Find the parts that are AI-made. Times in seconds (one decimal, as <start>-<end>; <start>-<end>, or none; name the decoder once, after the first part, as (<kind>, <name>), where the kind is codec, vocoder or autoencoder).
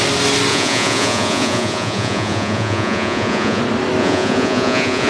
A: 0.5-3.6 (vocoder, Vocos); 4.0-5.1